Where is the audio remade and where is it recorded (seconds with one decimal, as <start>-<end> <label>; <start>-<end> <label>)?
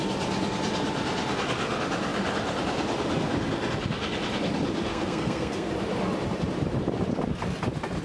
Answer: 0.0-4.9 recorded; 4.9-5.7 remade; 5.7-8.0 recorded